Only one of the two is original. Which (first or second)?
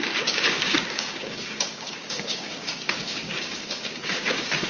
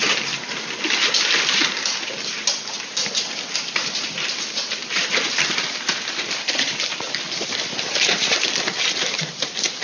second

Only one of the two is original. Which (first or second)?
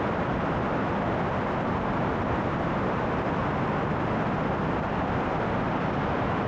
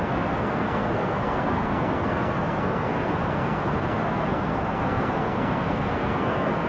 first